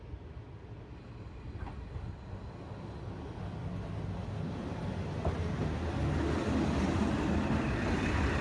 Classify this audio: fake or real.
real